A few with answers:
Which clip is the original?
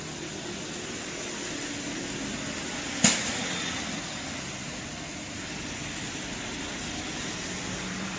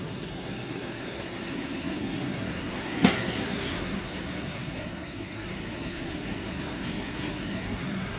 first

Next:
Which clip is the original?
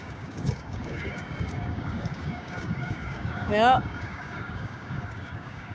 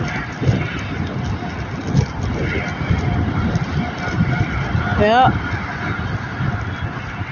second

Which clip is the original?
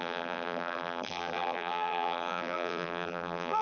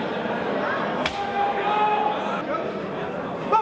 second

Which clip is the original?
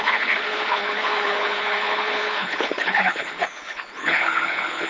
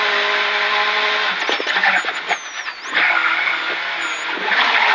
second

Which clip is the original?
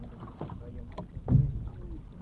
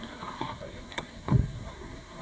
first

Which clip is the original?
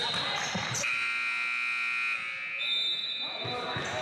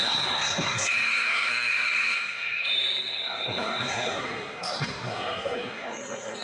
first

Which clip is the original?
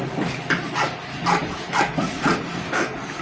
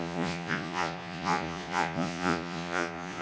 first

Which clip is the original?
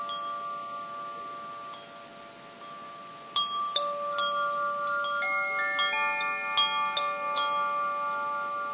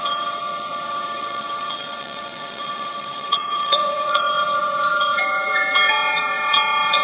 first